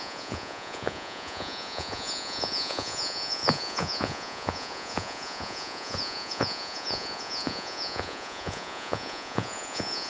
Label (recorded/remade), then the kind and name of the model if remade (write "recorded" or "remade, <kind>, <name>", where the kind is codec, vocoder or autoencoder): remade, vocoder, Vocos